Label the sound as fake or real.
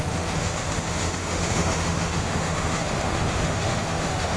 fake